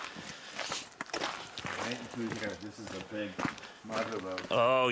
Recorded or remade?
recorded